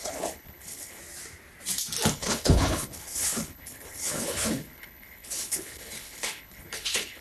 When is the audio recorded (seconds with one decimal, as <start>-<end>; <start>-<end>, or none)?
1.0-2.1